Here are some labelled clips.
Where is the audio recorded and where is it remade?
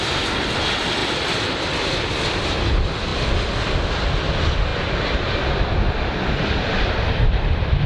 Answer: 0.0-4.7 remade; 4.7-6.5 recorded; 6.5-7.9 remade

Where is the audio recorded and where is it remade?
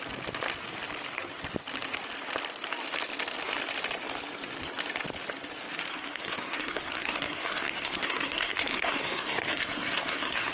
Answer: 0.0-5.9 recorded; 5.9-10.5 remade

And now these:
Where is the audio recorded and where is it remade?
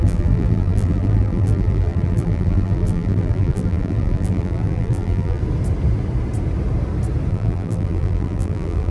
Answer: 0.0-5.4 remade; 5.4-7.3 recorded; 7.3-8.9 remade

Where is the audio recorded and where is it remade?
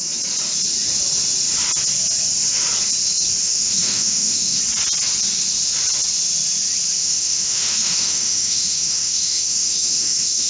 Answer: 0.0-3.4 recorded; 3.4-4.6 remade; 4.6-7.0 recorded; 7.0-10.5 remade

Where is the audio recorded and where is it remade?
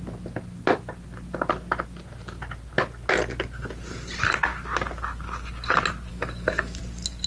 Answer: 0.0-6.1 recorded; 6.1-6.8 remade; 6.8-7.3 recorded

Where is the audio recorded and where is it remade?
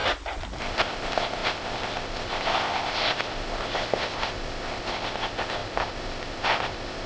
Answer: 0.0-0.6 recorded; 0.6-7.1 remade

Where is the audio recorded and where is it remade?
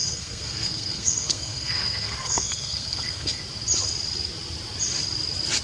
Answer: 0.0-3.4 remade; 3.4-5.6 recorded